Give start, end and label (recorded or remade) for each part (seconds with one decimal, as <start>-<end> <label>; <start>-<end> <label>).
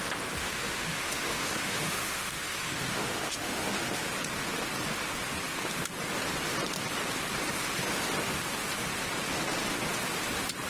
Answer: 0.0-0.4 recorded; 0.4-4.1 remade; 4.1-10.7 recorded